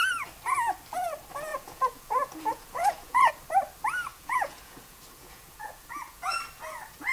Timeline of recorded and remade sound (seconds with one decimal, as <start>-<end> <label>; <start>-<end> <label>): 0.0-1.5 recorded; 1.5-3.3 remade; 3.3-4.1 recorded; 4.1-6.4 remade; 6.4-7.1 recorded